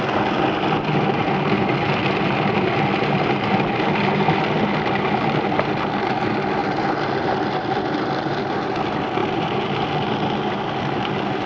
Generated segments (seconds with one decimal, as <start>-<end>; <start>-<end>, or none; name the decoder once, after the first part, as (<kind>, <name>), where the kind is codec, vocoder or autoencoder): none